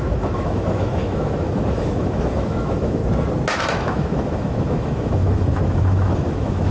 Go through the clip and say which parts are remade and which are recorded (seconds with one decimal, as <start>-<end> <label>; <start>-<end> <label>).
0.0-3.0 remade; 3.0-3.6 recorded; 3.6-6.7 remade